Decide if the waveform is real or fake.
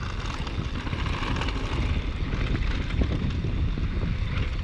real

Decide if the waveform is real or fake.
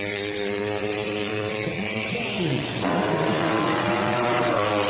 fake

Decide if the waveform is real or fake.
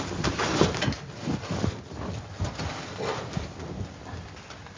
real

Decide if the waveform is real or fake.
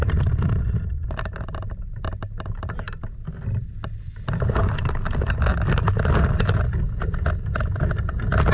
real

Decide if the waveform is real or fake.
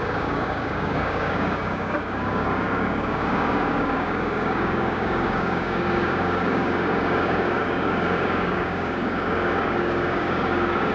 fake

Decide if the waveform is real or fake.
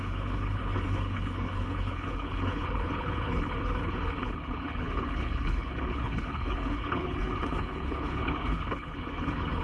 fake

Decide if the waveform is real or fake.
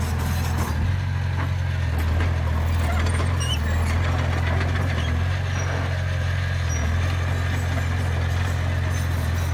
real